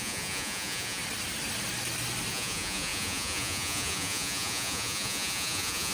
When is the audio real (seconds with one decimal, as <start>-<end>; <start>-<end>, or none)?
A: 1.0-2.3